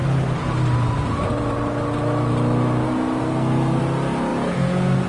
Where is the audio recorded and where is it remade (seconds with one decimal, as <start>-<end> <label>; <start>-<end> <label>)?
0.0-3.2 recorded; 3.2-3.8 remade; 3.8-5.1 recorded